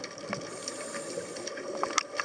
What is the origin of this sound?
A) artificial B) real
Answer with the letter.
B